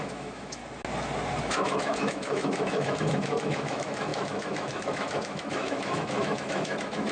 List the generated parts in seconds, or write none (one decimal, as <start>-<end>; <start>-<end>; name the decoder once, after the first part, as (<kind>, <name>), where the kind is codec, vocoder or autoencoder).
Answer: 0.0-0.6 (autoencoder, DAC-VAE); 1.4-7.1